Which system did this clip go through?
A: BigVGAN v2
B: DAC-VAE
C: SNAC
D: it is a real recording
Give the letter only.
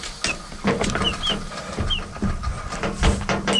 D